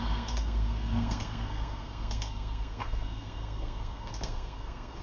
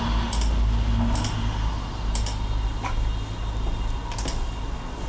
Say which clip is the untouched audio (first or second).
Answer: second